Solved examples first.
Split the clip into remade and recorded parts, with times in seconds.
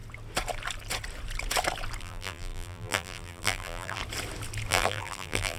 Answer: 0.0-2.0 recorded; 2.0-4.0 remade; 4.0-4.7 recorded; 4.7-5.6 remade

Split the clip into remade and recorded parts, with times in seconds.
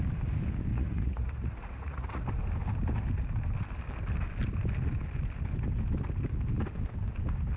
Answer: 0.0-0.7 recorded; 0.7-2.2 remade; 2.2-7.6 recorded